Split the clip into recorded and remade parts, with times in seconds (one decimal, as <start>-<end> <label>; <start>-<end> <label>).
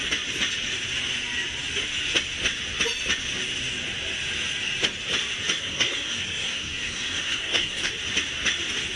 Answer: 0.0-5.6 recorded; 5.6-7.9 remade; 7.9-9.0 recorded